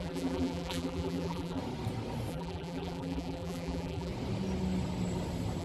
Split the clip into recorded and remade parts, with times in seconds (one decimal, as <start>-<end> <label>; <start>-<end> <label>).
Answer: 0.0-1.6 remade; 1.6-2.3 recorded; 2.3-4.1 remade; 4.1-5.6 recorded